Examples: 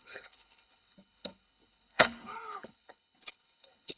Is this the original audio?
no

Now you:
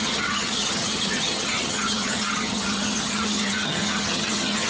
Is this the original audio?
no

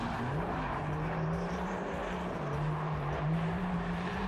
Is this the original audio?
no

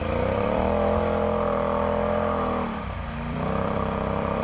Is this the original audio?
no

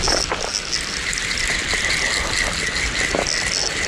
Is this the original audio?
yes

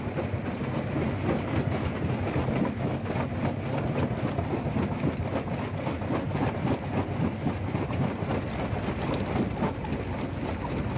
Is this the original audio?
yes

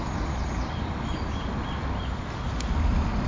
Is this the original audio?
yes